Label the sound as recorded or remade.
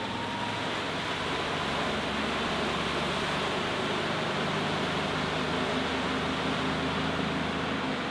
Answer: recorded